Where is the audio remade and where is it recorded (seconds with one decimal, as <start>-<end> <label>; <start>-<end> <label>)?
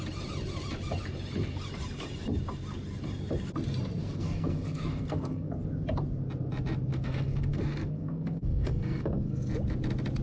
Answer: 0.0-4.0 recorded; 4.0-5.5 remade; 5.5-6.9 recorded; 6.9-9.5 remade; 9.5-10.2 recorded